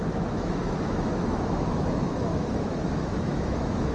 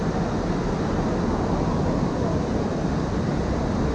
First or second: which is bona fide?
second